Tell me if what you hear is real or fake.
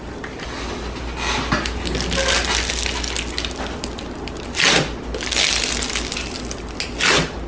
real